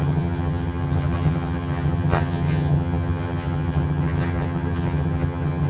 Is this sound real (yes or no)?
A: no